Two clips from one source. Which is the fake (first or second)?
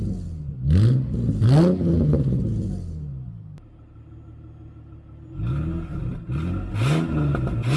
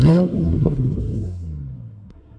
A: second